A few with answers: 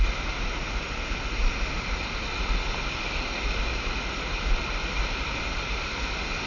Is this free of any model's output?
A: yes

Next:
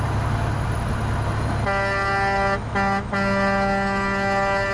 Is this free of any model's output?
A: yes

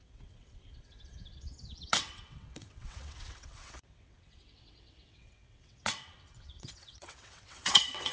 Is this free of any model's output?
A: no